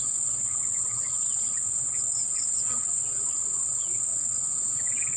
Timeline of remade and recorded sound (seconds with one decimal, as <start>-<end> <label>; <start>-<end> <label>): 0.0-5.2 remade